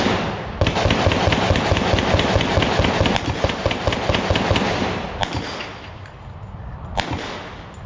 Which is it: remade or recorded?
recorded